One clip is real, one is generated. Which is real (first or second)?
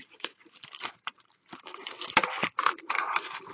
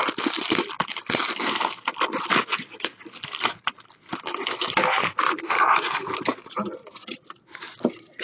second